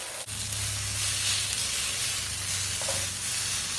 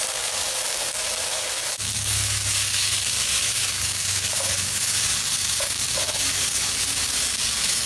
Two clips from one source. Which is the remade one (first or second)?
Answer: second